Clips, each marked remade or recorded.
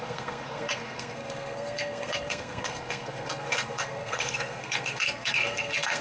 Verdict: remade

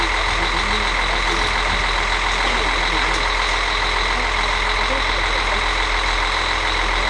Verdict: recorded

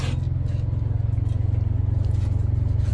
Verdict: recorded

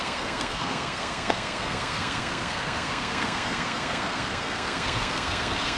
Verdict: remade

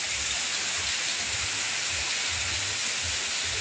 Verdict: recorded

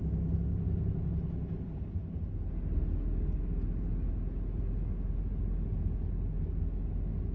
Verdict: recorded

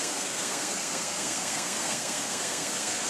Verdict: remade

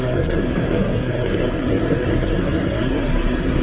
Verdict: remade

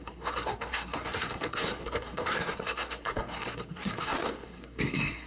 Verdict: remade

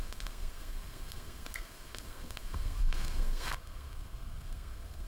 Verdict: remade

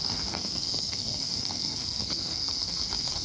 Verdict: remade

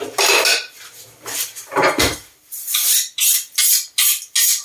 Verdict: recorded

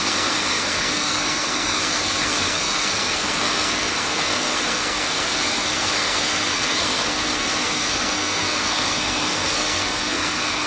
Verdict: remade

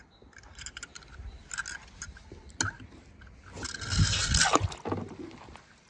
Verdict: recorded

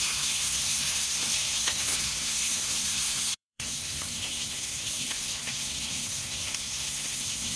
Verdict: remade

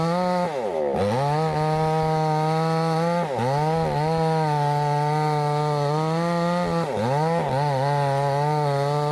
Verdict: recorded